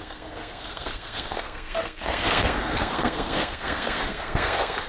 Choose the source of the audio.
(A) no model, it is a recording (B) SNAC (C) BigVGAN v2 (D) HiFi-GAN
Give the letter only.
B